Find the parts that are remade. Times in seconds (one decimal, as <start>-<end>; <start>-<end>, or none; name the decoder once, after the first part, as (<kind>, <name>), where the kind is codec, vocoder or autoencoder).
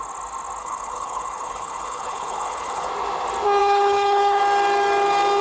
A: 0.6-2.9 (codec, HILCodec); 3.6-4.4